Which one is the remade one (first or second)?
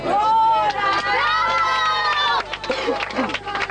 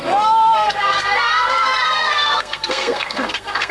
second